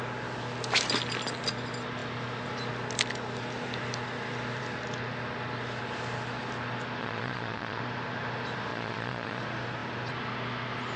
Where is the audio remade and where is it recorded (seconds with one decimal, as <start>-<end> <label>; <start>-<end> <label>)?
0.0-7.0 recorded; 7.0-7.8 remade; 7.8-8.7 recorded; 8.7-9.4 remade; 9.4-11.0 recorded